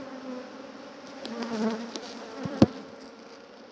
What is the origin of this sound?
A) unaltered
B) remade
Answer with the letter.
B